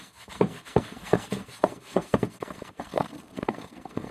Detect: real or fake fake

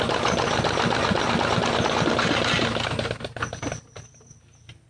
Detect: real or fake real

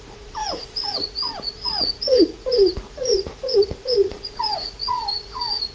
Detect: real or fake fake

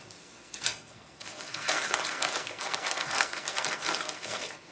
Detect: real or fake fake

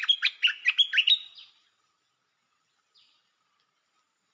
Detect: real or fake real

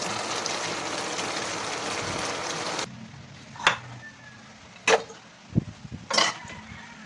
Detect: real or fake real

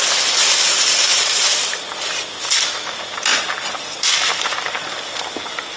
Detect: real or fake real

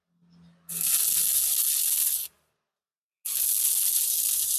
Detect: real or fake real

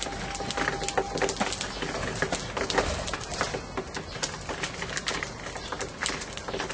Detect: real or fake real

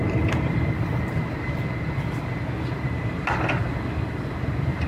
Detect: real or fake real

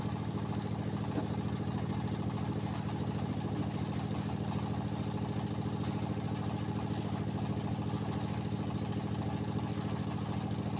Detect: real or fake real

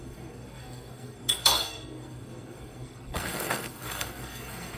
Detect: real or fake fake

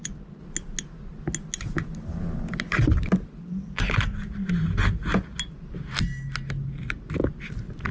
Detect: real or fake real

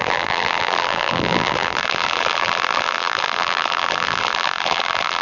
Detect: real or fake fake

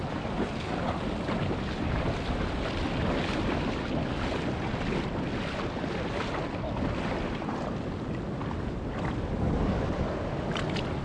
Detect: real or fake real